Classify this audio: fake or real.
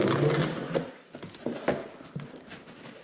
real